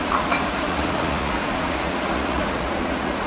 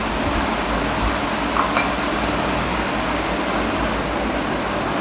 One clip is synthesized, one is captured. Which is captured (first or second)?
second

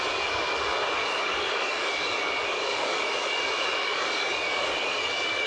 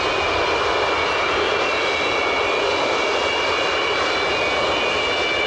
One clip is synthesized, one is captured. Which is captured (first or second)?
second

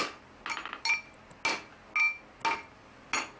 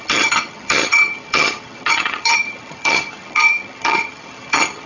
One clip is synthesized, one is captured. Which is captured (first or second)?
first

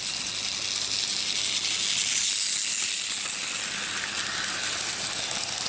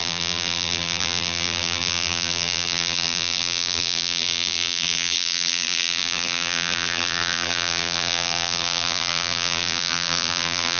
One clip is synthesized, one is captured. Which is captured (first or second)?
first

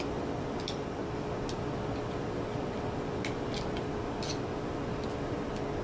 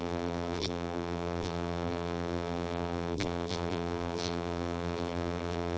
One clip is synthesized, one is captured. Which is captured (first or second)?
first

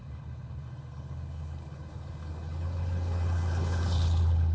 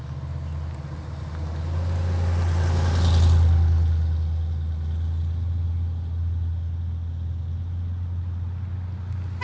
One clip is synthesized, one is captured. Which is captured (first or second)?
second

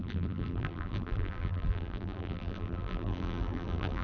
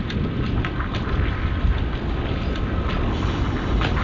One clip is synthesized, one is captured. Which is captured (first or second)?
second